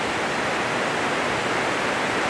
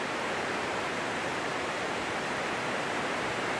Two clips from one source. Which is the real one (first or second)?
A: first